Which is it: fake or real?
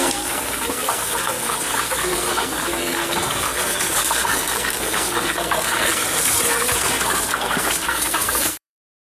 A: fake